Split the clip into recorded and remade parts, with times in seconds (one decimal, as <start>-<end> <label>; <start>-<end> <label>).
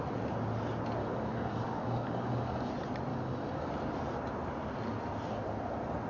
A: 0.0-1.0 recorded; 1.0-2.7 remade; 2.7-3.1 recorded; 3.1-3.7 remade; 3.7-6.1 recorded